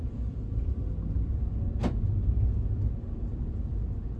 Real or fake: real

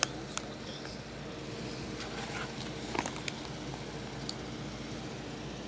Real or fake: real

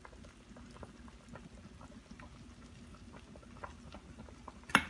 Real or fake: real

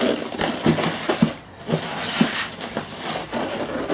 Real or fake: real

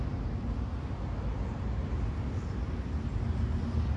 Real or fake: real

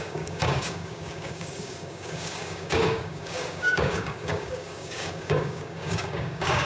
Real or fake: fake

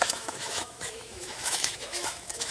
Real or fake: fake